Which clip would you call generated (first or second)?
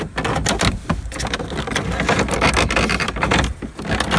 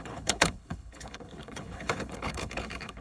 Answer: second